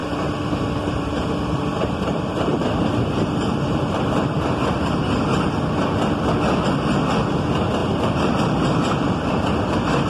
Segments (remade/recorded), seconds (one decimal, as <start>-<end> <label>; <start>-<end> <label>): 0.0-5.0 remade; 5.0-7.8 recorded; 7.8-9.3 remade; 9.3-10.1 recorded